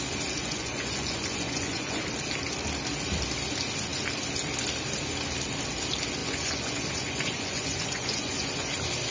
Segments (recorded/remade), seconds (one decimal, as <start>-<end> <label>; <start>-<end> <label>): 0.0-0.4 recorded; 0.4-2.0 remade; 2.0-6.2 recorded; 6.2-8.7 remade; 8.7-9.1 recorded